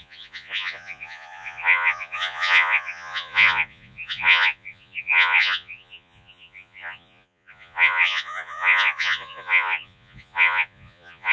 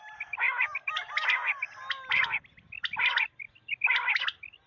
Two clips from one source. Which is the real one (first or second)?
second